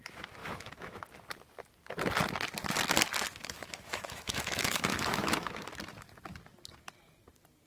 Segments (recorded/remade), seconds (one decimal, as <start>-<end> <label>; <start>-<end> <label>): 0.0-0.4 recorded; 0.4-1.0 remade; 1.0-3.4 recorded; 3.4-5.6 remade; 5.6-7.7 recorded